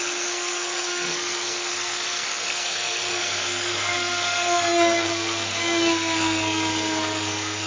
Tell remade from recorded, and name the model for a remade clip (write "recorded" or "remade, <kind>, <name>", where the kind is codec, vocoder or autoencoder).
remade, codec, SNAC